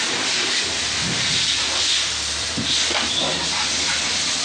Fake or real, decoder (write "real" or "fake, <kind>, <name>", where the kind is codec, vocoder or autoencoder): real